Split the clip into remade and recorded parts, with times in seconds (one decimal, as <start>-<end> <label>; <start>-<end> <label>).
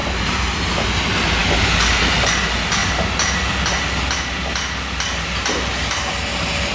0.0-0.6 remade; 0.6-6.7 recorded